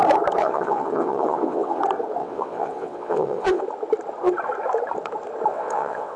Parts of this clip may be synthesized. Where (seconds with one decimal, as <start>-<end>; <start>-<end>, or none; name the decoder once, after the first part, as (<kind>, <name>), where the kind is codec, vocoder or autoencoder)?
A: 0.4-1.8 (vocoder, WaveNeXt); 2.2-3.6; 5.5-6.2